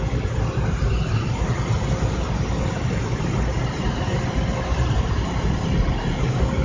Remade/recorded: recorded